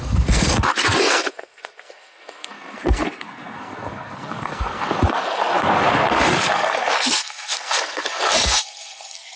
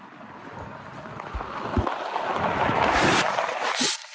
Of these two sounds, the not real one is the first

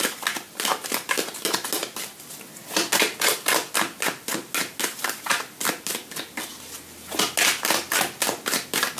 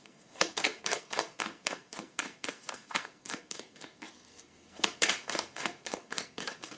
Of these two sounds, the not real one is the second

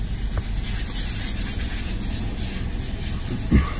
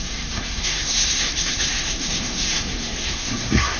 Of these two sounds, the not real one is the second